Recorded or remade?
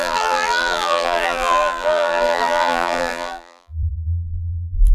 remade